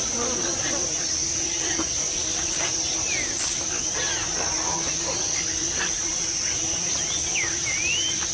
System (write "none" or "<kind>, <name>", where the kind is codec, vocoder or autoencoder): none